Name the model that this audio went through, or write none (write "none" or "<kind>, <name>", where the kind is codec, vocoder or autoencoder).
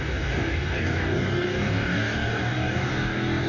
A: codec, DAC